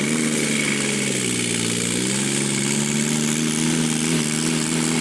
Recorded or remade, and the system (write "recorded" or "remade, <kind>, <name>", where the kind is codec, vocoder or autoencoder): recorded